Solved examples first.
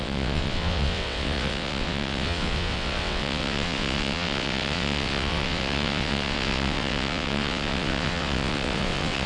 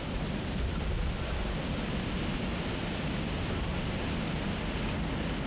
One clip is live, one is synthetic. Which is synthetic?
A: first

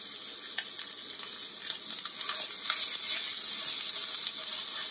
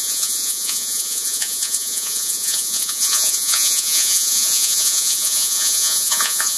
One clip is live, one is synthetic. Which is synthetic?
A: second